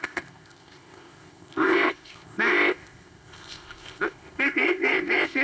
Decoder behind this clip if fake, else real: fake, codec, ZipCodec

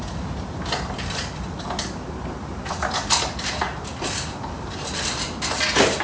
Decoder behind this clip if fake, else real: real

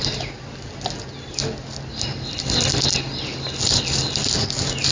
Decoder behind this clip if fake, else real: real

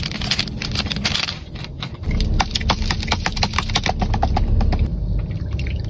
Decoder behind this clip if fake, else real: real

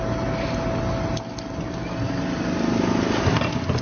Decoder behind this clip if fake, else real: real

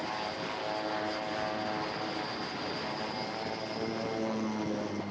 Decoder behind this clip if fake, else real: real